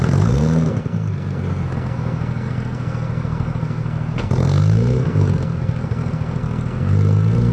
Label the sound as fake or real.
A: fake